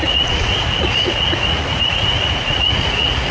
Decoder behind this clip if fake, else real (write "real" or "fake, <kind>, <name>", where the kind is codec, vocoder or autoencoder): fake, vocoder, Vocos